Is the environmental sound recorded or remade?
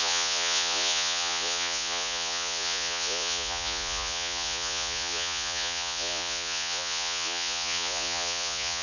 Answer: remade